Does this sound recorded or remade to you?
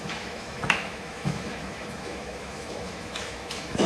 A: remade